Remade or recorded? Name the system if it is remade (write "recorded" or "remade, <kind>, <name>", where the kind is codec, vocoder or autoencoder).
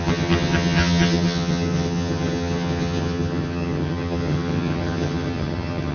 remade, vocoder, HiFi-GAN